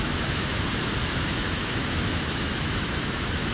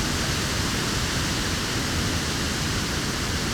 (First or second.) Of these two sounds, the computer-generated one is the first